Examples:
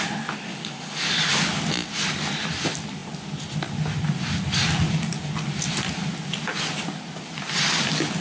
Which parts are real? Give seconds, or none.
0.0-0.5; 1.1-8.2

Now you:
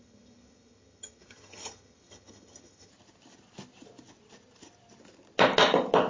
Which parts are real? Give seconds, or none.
2.9-6.1